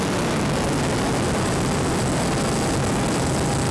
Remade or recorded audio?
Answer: recorded